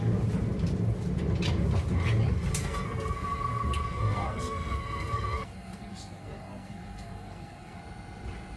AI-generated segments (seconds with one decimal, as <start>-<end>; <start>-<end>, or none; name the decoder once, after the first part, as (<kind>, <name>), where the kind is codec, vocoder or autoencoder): 2.6-7.8 (codec, SNAC)